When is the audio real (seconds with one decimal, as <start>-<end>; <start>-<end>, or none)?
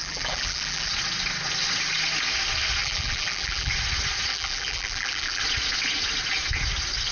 0.9-2.8; 3.7-4.3; 5.4-7.1